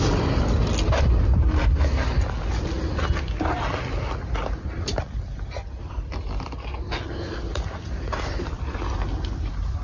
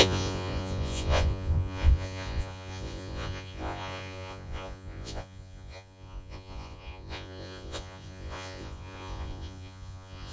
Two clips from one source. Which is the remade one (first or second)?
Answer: second